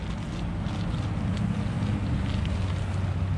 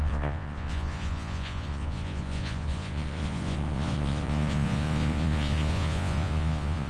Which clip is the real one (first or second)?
first